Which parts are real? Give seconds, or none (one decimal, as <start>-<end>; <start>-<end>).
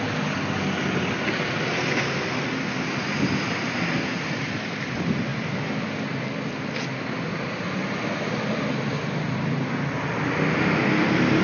0.0-11.4